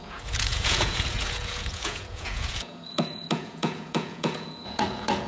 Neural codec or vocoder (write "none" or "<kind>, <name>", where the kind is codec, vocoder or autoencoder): vocoder, Vocos